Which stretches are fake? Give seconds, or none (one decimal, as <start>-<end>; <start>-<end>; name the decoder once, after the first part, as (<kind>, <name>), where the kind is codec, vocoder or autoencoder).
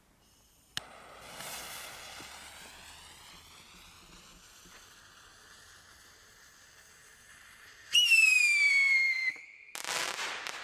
7.0-8.4 (vocoder, BigVGAN v2)